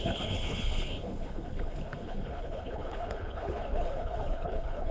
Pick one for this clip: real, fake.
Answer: fake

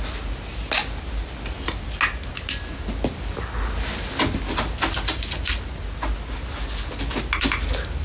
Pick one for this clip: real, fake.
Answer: real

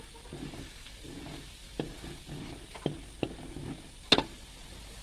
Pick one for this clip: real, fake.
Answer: real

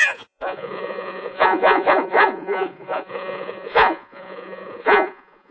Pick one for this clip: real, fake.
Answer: fake